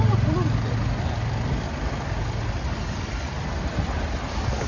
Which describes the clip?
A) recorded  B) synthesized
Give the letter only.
A